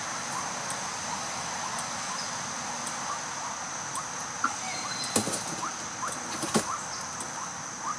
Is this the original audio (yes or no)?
yes